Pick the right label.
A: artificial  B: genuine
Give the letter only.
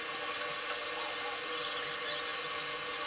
B